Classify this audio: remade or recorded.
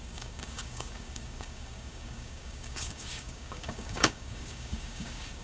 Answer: remade